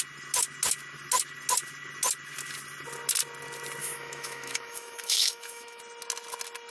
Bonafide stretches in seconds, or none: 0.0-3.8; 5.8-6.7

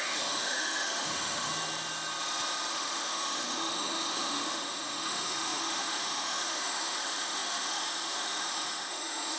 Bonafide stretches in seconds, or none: 1.5-2.7

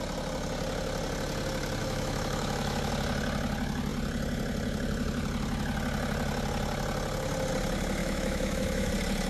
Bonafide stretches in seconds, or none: 0.0-1.8; 2.9-8.0; 8.9-9.3

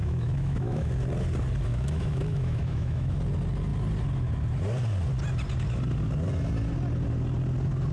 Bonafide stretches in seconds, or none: 0.9-1.7; 3.2-7.9

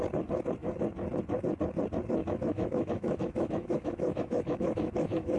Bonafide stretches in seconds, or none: 0.0-2.2

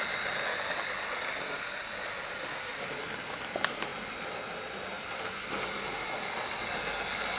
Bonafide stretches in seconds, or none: 0.0-7.4